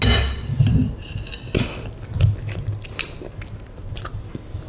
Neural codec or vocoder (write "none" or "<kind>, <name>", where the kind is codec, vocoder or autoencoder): none